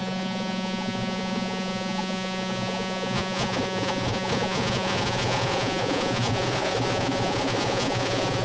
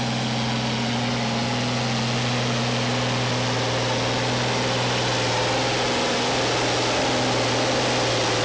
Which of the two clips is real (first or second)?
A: second